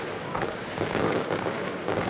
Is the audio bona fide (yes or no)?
no